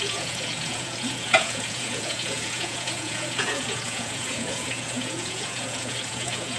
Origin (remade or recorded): remade